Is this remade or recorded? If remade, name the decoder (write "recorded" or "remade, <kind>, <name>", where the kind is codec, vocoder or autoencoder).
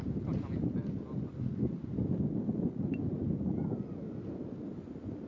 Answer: recorded